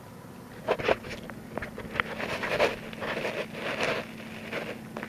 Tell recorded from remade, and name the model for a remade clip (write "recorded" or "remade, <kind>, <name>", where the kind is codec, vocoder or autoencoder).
recorded